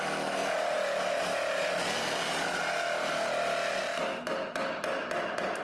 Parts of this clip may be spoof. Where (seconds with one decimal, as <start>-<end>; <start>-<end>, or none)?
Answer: none